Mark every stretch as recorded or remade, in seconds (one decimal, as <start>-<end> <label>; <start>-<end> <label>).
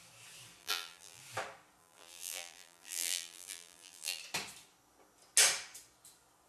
0.0-0.6 recorded; 0.6-1.2 remade; 1.2-1.8 recorded; 1.8-4.2 remade; 4.2-6.5 recorded